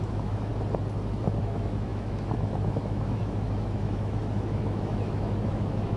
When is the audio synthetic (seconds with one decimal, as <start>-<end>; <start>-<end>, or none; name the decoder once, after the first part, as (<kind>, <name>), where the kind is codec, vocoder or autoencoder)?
0.0-0.5 (autoencoder, DAC-VAE); 1.4-6.0